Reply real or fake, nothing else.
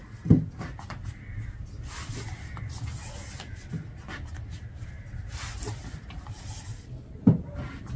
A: real